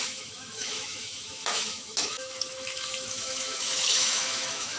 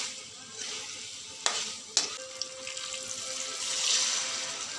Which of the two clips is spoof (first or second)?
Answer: first